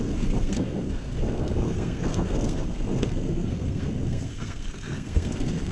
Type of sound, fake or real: fake